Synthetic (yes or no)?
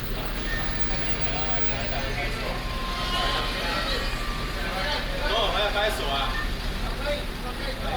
no